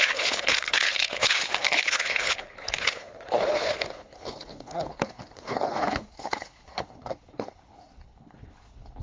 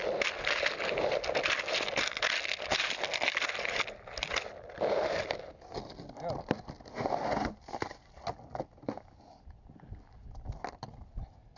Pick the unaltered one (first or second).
second